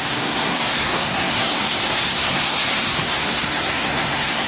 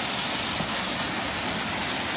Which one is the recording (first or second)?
second